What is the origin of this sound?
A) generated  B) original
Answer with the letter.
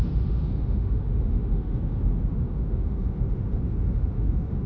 A